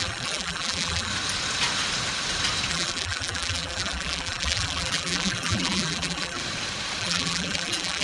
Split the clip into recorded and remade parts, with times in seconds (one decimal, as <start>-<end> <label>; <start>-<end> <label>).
0.0-1.1 remade; 1.1-2.7 recorded; 2.7-6.4 remade; 6.4-7.0 recorded; 7.0-8.0 remade